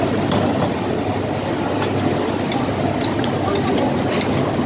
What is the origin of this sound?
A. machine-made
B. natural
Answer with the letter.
B